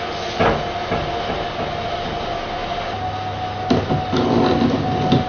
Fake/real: real